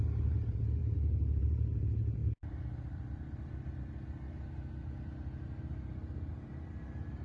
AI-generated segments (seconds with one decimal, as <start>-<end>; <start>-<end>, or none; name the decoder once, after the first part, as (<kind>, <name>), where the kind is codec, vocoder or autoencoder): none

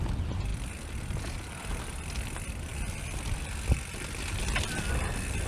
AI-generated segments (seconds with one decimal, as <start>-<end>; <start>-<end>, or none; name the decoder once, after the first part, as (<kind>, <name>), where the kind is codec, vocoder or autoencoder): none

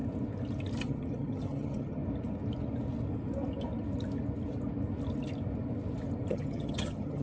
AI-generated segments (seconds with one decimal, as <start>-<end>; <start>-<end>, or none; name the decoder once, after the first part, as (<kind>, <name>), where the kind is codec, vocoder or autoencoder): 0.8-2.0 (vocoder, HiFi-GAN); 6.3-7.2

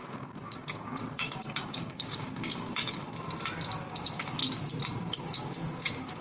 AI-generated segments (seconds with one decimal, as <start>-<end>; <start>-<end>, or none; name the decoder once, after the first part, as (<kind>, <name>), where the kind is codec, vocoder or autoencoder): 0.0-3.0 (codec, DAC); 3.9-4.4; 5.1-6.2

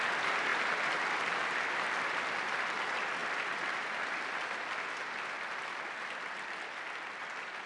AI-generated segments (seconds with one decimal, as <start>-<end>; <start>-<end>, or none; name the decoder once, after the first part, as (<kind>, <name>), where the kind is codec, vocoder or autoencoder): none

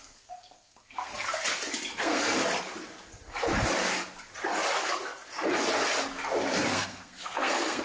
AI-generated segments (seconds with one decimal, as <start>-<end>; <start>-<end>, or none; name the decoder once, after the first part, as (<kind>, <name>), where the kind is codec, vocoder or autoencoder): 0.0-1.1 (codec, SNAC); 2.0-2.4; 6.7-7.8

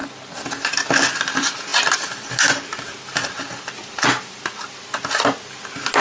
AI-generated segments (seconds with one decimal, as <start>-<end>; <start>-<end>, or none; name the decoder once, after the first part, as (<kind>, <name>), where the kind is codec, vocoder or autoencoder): none